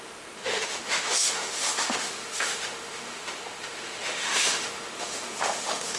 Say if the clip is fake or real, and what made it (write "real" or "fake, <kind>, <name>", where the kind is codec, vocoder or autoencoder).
fake, autoencoder, DAC-VAE